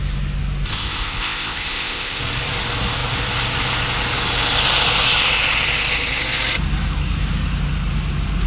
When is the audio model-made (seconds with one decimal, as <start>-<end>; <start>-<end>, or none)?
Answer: 0.7-2.2